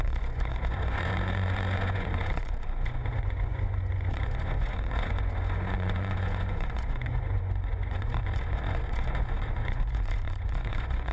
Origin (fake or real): fake